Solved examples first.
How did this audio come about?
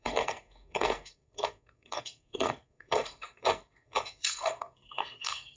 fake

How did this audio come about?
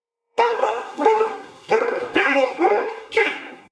fake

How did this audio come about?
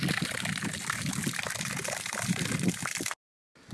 real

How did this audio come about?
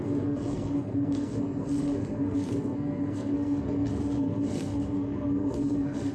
fake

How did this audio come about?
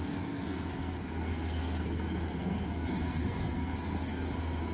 fake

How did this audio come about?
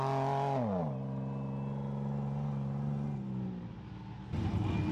real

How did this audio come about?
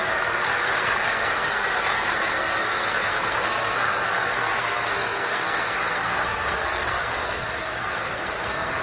fake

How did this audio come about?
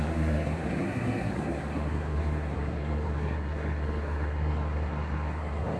fake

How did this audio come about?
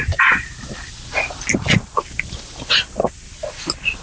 real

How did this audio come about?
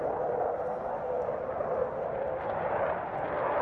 real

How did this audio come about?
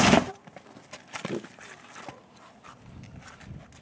real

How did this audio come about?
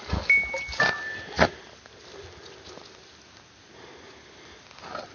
real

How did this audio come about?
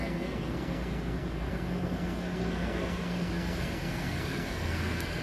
fake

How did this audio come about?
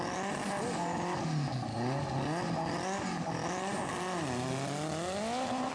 real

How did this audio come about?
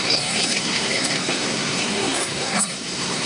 fake